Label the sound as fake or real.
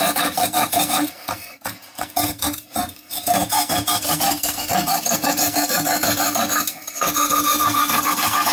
fake